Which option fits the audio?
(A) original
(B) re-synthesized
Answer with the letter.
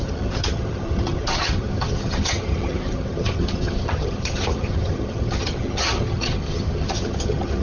B